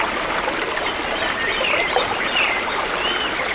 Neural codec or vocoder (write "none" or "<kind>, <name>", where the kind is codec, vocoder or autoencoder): none